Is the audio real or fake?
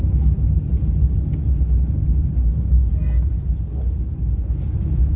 real